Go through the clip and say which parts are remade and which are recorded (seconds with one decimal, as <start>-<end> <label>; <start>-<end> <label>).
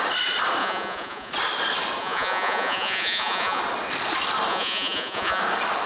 0.0-0.6 recorded; 0.6-1.3 remade; 1.3-2.0 recorded; 2.0-3.6 remade; 3.6-4.5 recorded; 4.5-5.4 remade; 5.4-5.9 recorded